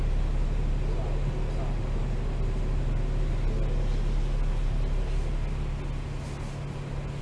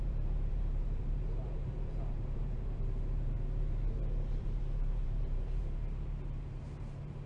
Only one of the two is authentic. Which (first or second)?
first